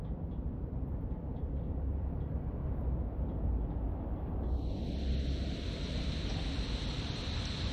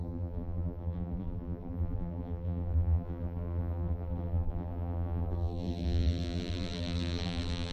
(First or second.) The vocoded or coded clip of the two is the second